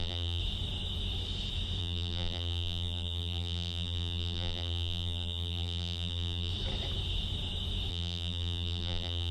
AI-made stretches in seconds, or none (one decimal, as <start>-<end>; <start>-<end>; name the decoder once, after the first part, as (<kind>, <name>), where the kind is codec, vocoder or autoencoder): 0.0-0.4 (vocoder, BigVGAN v2); 1.8-6.5; 7.9-9.3